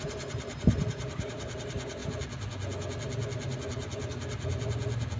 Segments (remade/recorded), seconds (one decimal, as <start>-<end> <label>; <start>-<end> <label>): 0.0-2.0 remade; 2.0-5.2 recorded